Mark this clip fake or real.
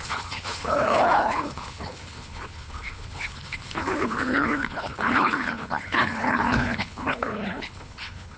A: fake